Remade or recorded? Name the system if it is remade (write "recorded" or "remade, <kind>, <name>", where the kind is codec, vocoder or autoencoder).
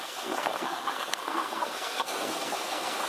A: remade, codec, SNAC